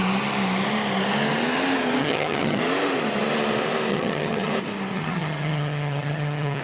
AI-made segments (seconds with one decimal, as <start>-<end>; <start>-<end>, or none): 2.0-2.6; 3.9-4.5; 4.9-6.6